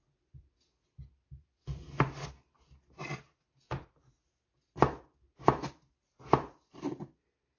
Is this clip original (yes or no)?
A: yes